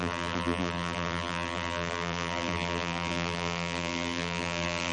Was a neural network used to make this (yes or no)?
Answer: yes